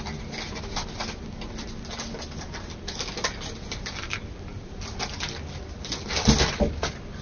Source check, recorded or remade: recorded